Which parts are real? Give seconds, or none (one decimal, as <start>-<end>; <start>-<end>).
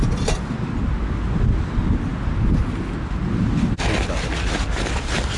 0.0-5.4